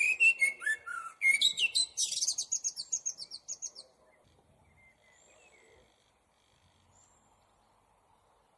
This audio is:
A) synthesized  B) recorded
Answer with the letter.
B